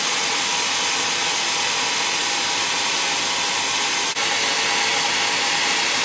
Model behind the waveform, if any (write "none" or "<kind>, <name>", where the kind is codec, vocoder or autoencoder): none